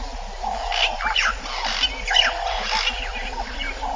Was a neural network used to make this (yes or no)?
no